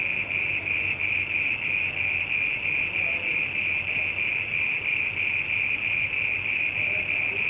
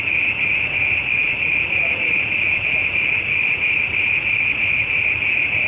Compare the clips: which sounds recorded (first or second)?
first